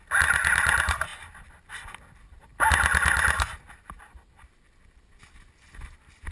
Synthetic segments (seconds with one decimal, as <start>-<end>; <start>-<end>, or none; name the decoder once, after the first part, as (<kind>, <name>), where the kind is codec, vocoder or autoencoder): none